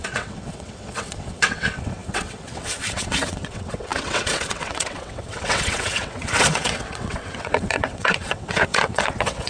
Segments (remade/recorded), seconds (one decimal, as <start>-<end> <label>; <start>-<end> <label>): 0.0-9.5 remade